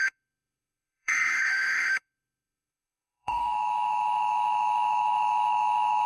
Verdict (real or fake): fake